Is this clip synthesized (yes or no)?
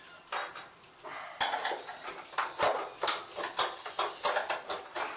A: no